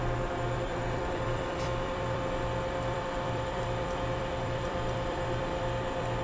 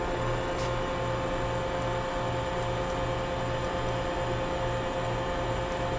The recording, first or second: second